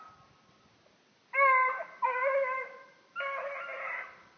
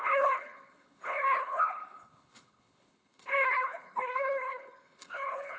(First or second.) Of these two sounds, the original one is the first